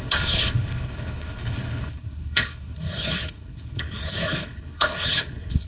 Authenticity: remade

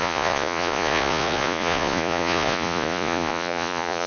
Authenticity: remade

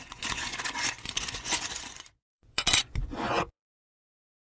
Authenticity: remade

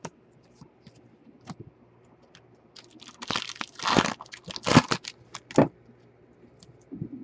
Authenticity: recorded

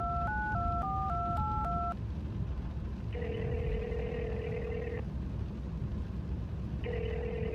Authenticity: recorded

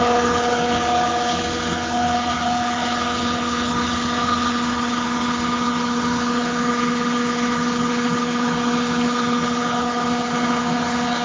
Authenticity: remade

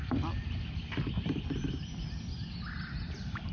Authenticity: recorded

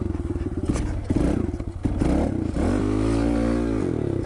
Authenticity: recorded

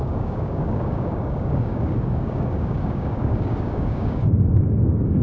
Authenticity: remade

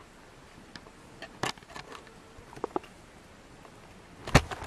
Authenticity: recorded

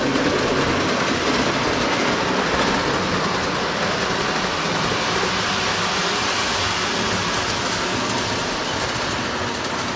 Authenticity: recorded